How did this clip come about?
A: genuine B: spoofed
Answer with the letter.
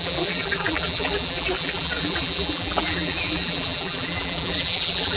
B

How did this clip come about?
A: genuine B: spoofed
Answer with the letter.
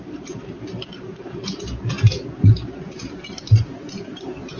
B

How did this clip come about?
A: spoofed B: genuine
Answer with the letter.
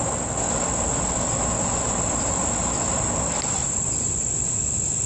B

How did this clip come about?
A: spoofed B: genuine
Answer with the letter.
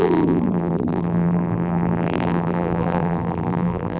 A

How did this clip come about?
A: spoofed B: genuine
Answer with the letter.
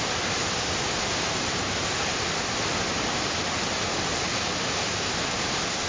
B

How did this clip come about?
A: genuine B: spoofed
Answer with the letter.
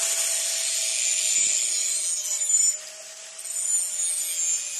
A